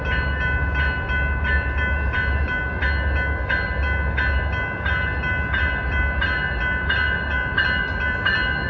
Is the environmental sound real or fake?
real